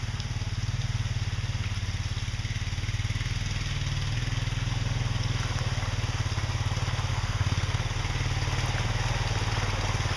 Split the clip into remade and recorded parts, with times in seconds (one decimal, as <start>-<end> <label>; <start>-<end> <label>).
0.0-7.1 recorded; 7.1-8.0 remade; 8.0-10.2 recorded